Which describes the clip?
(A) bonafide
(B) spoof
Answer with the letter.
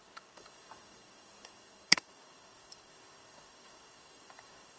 B